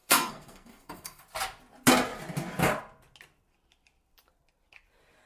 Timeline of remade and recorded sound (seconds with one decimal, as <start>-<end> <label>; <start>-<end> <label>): 0.0-1.2 remade; 1.2-5.3 recorded